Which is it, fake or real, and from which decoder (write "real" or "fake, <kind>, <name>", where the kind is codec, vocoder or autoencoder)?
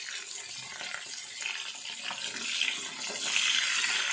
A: real